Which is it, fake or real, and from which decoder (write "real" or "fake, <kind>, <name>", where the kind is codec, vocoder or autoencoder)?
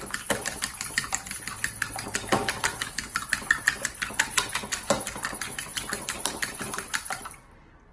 real